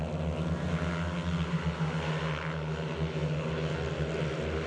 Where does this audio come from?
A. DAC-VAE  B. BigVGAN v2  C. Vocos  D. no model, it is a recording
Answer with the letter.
D